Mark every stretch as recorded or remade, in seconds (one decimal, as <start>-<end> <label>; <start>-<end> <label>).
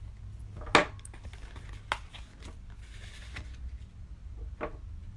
0.0-5.2 recorded